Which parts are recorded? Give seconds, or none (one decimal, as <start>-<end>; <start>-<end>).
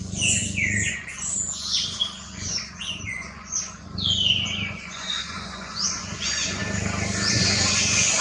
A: 6.6-7.3